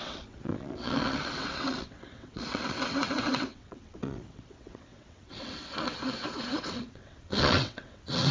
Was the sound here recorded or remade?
remade